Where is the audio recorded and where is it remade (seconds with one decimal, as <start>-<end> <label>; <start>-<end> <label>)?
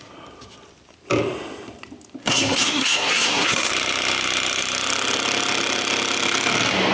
0.0-2.2 recorded; 2.2-3.7 remade; 3.7-6.9 recorded